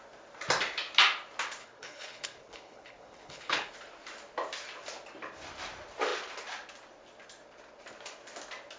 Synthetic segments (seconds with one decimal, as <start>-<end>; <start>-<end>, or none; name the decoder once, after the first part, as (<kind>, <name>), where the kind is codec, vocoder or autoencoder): 1.6-3.7 (codec, HILCodec)